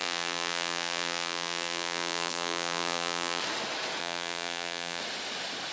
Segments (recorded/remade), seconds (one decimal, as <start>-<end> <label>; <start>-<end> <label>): 0.0-3.4 remade; 3.4-4.0 recorded; 4.0-5.0 remade; 5.0-5.7 recorded